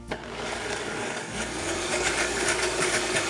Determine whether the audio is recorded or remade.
remade